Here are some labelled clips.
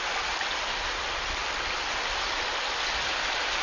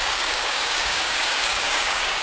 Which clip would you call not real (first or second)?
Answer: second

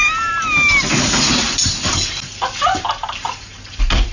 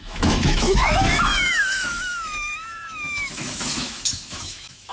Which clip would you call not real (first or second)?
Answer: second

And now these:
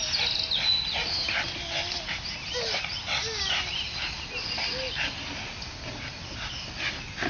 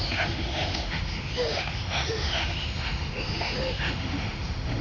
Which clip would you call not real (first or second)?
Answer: second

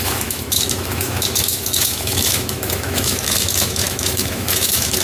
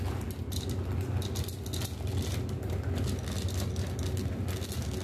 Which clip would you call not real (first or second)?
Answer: first